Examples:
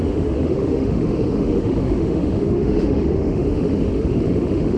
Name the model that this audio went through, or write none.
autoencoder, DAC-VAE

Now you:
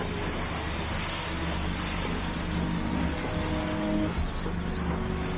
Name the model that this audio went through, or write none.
none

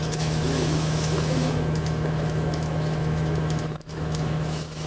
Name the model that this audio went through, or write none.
autoencoder, DAC-VAE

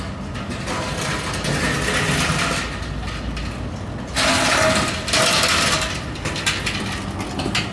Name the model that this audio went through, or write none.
none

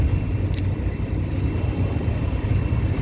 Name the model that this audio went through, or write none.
none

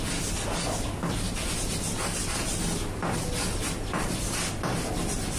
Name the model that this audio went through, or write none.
none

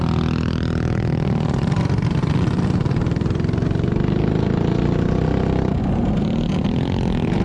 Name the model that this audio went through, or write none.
none